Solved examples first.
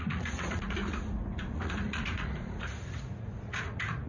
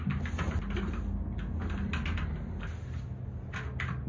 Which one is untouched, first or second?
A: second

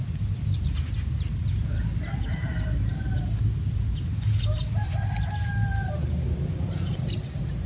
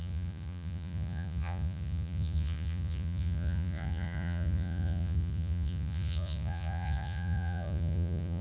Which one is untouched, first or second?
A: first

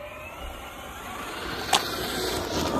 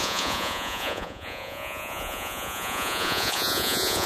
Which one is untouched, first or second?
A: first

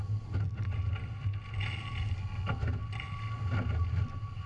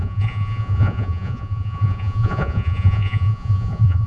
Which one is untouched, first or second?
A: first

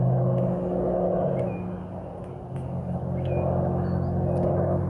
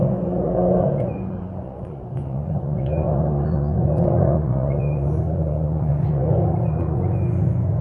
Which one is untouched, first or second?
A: first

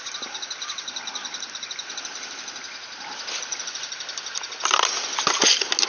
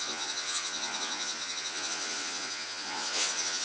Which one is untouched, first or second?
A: first